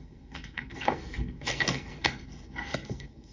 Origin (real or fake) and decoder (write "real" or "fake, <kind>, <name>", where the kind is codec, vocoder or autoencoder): fake, codec, SNAC